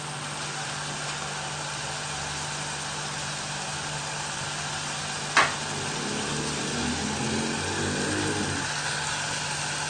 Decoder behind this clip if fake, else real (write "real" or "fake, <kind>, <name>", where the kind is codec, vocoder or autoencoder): real